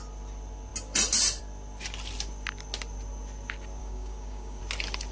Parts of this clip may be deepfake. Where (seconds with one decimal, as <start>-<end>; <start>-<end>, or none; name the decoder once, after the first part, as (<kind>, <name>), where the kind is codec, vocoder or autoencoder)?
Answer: 3.8-4.6 (codec, DAC)